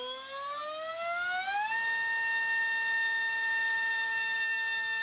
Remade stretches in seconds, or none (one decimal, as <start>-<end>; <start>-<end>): none